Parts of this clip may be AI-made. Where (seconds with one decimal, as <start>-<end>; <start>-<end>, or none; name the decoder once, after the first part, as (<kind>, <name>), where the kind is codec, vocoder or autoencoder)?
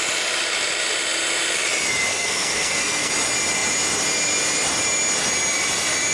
2.1-3.1 (codec, SNAC)